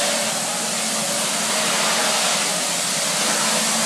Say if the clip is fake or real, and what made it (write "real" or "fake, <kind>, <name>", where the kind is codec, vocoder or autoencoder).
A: real